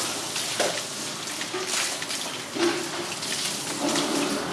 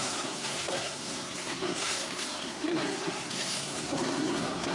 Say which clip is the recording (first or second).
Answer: first